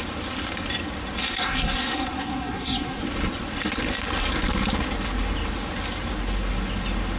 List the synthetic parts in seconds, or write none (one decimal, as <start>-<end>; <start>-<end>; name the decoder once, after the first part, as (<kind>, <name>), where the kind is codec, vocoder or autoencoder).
1.2-3.0 (codec, SNAC)